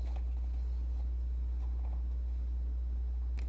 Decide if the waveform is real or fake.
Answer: real